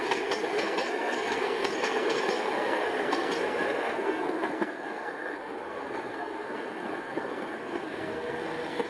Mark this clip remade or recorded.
remade